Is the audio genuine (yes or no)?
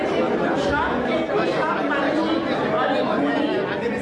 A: yes